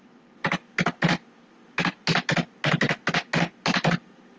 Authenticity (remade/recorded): recorded